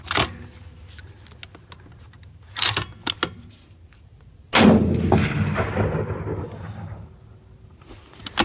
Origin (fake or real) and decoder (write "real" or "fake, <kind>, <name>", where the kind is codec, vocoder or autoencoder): real